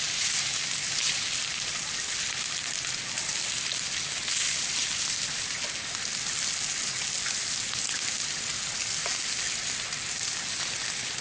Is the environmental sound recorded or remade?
recorded